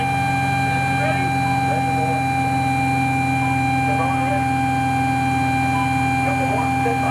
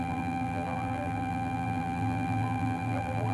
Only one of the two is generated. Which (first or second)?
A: second